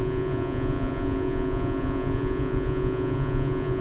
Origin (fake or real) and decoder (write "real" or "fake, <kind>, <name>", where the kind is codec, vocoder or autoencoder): fake, vocoder, Vocos